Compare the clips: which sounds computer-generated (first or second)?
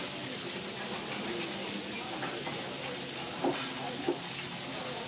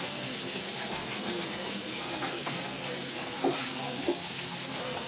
second